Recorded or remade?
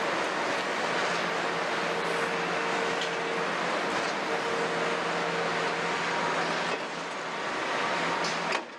recorded